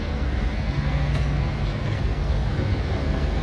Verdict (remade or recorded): remade